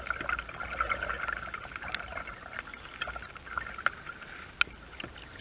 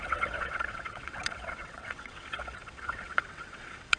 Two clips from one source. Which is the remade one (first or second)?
second